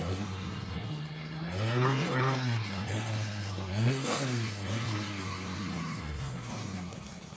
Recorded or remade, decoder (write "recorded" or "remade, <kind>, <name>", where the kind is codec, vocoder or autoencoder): remade, codec, SNAC